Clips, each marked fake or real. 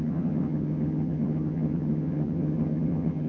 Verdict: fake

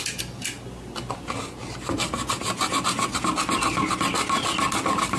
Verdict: real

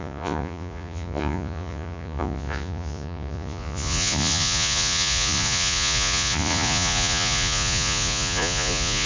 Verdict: fake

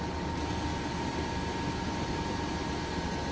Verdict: real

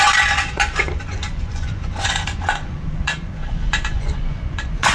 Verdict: fake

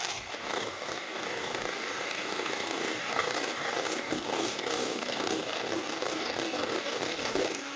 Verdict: fake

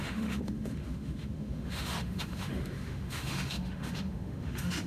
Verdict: fake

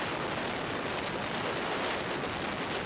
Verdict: real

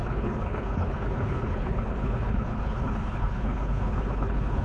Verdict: fake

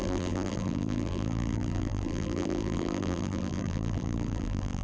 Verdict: fake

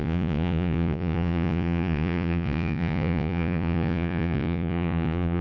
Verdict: fake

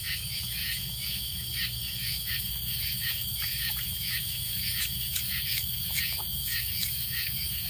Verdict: fake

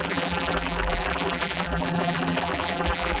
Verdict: fake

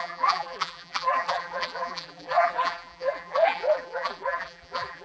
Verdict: fake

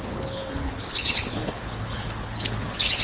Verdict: fake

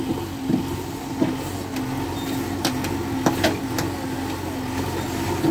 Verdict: real